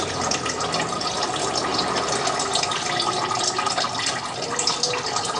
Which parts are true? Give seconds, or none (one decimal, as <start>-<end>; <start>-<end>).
0.0-5.4